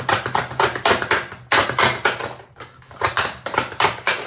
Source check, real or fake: real